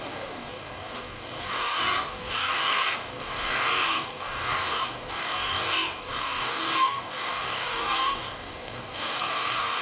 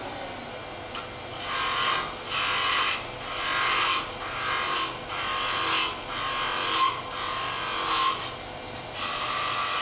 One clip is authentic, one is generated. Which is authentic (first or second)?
second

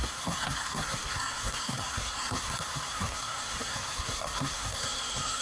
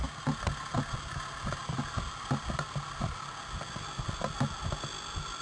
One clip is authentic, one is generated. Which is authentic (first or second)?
second